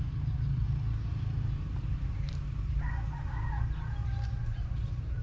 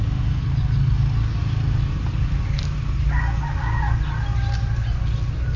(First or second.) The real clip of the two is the second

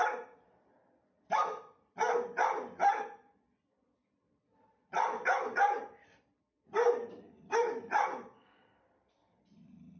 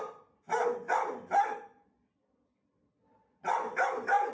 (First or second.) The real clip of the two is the second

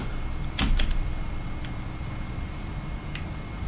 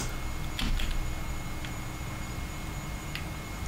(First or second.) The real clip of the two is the second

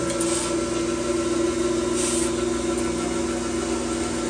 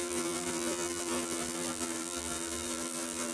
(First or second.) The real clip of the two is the first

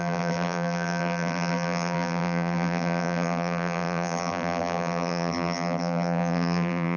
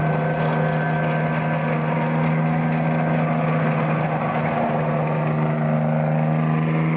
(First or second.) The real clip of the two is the second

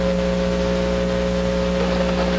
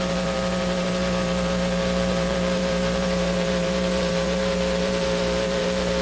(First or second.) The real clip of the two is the first